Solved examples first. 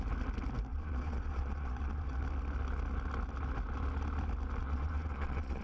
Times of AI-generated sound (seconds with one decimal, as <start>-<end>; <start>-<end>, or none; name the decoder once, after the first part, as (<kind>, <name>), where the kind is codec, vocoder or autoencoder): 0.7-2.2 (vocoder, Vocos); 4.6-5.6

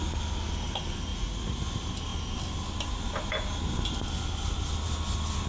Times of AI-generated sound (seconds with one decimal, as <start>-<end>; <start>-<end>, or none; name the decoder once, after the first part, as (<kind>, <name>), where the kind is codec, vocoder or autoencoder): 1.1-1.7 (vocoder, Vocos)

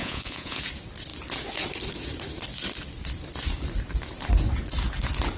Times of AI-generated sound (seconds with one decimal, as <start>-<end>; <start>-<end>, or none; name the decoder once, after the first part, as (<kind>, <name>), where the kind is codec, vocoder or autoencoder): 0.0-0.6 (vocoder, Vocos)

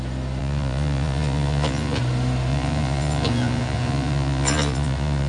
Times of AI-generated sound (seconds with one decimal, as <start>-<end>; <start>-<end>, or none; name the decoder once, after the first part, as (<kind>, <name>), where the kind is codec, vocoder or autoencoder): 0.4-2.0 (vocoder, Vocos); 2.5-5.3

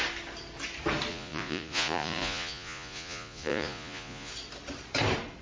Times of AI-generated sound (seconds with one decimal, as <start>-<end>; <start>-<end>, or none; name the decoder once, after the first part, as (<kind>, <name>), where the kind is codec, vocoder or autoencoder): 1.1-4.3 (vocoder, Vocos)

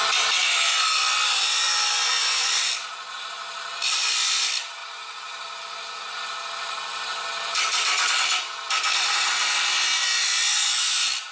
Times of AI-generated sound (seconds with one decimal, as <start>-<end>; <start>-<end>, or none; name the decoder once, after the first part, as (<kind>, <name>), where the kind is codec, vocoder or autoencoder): none